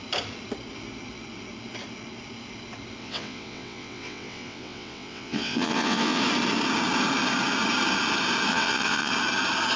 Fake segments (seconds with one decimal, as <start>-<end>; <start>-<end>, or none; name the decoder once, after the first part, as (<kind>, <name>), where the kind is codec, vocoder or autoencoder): 3.0-6.2 (vocoder, WaveNeXt); 8.5-9.1